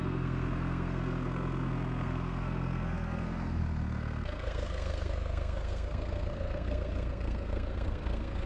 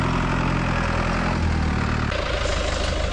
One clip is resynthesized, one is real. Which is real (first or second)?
second